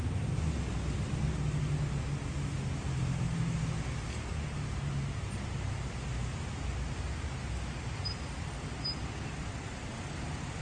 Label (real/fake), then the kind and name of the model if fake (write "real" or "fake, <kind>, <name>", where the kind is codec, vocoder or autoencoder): real